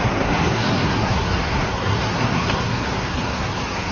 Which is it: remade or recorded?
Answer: remade